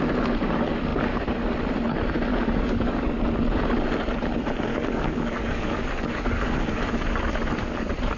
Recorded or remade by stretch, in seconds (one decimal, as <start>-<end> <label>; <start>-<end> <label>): 0.0-2.3 recorded; 2.3-3.2 remade; 3.2-4.7 recorded; 4.7-6.8 remade; 6.8-8.2 recorded